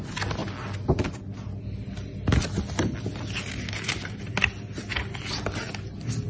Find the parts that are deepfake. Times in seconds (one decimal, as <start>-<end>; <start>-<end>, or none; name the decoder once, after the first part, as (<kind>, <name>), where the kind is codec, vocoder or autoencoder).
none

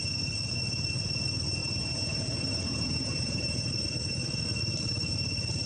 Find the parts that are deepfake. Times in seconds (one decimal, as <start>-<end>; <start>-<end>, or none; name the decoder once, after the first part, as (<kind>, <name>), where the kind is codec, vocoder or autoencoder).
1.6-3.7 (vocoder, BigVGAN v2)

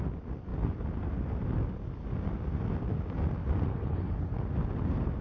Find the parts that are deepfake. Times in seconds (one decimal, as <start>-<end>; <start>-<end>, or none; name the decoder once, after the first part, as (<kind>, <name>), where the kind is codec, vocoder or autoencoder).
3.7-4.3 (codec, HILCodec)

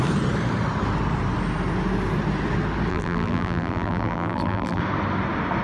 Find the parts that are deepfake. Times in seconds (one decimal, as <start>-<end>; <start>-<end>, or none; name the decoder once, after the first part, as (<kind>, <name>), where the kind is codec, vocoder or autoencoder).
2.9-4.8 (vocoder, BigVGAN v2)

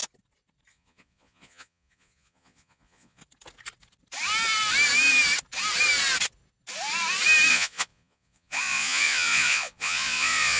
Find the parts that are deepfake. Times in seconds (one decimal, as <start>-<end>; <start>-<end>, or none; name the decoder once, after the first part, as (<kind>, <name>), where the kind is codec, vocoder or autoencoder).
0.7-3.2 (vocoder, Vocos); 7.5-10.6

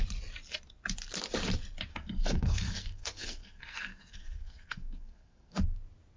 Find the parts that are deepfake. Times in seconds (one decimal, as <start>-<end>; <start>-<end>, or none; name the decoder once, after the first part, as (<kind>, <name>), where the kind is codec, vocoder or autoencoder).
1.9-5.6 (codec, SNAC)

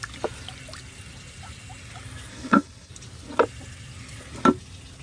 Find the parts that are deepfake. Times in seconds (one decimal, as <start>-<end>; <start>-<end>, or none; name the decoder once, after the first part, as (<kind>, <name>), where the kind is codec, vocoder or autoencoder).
2.3-2.9 (codec, HILCodec)

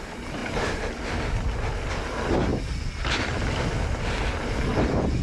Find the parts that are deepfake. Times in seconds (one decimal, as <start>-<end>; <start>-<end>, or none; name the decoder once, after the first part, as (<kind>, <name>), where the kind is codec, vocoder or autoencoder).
none